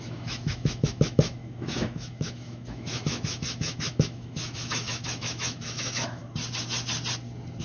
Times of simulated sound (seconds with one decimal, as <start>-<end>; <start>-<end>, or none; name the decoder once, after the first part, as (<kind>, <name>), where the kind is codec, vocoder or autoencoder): 0.0-6.2 (autoencoder, DAC-VAE)